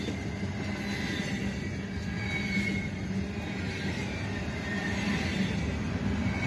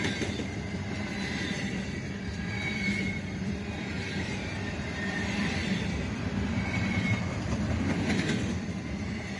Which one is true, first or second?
first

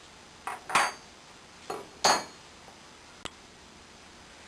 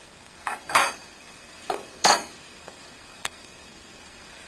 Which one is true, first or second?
first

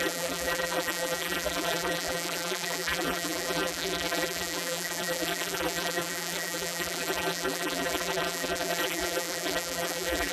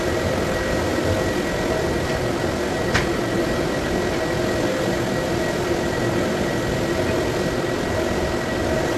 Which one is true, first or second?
second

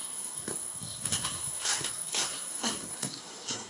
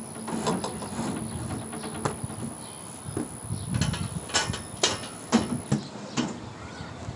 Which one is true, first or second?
second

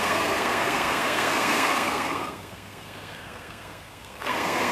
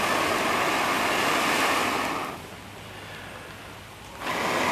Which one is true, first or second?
second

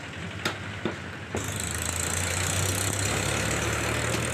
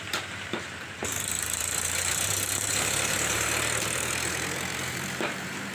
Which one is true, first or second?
first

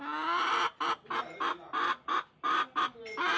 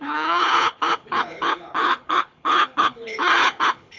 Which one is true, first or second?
first